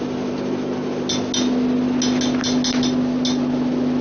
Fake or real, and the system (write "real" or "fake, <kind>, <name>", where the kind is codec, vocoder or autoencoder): real